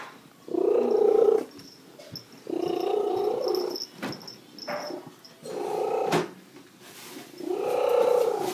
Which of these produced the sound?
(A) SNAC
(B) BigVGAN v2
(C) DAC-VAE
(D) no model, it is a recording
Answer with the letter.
D